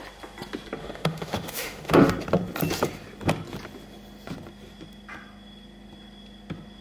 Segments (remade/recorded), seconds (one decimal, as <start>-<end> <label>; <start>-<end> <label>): 0.0-0.8 recorded; 0.8-2.1 remade; 2.1-6.8 recorded